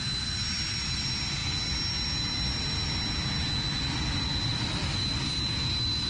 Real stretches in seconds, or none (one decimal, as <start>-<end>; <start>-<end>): 0.0-6.1